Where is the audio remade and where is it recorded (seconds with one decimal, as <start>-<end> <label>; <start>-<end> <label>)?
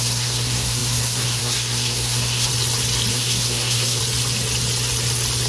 0.0-2.5 remade; 2.5-3.1 recorded; 3.1-4.0 remade; 4.0-5.5 recorded